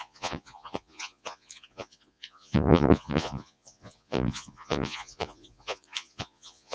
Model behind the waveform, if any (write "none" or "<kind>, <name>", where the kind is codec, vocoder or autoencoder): vocoder, Vocos